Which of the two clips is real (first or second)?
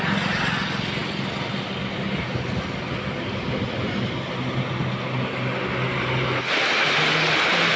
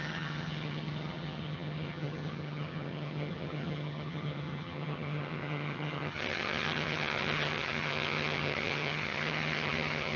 first